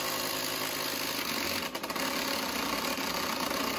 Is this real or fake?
real